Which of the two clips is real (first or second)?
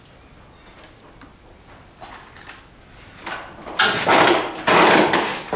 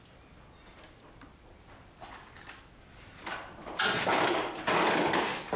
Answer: first